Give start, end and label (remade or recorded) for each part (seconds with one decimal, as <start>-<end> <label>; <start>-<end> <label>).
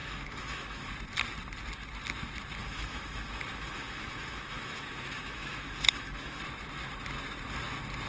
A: 0.0-0.9 remade; 0.9-2.6 recorded; 2.6-6.4 remade; 6.4-8.1 recorded